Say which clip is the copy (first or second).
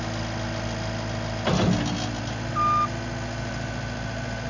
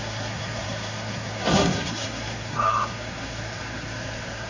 second